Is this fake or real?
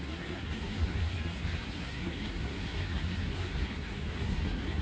fake